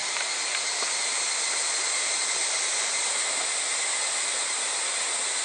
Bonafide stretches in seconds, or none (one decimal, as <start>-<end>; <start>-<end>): 0.0-5.4